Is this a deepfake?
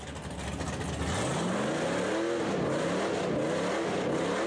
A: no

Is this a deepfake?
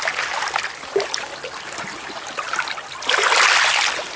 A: no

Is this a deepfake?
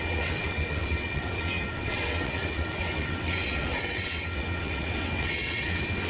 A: yes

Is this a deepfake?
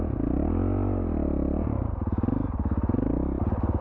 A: no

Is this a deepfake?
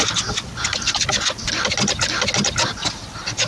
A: no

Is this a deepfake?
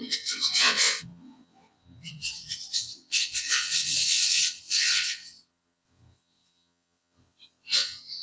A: yes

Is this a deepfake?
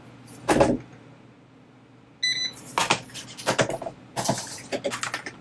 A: no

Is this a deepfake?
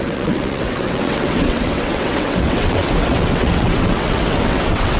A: yes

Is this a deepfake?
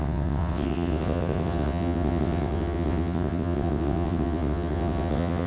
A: yes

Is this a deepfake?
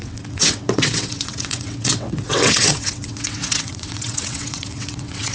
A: yes